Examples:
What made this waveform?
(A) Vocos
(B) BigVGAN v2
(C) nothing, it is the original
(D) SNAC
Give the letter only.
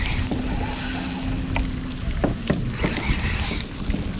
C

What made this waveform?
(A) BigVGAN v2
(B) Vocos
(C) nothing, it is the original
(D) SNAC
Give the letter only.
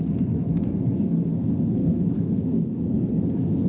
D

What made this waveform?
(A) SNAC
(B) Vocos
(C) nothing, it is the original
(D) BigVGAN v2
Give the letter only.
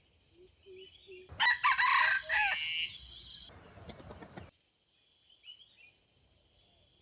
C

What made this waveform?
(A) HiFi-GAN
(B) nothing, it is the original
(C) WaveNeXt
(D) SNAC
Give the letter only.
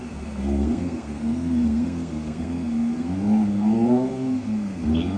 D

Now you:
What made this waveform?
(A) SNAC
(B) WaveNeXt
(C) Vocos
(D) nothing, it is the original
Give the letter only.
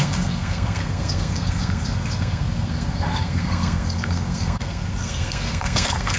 A